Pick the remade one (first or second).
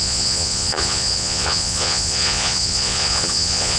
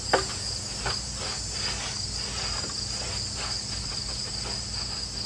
first